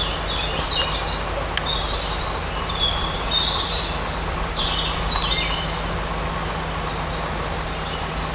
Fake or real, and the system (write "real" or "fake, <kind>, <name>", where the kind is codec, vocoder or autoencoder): real